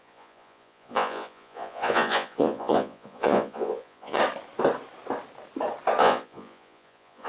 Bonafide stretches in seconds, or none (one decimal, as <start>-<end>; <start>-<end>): 4.2-6.0